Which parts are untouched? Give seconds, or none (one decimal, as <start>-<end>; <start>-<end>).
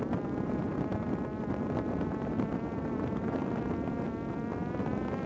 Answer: none